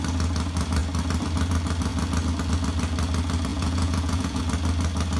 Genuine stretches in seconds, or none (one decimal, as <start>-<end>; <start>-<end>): 0.0-3.5; 4.4-5.2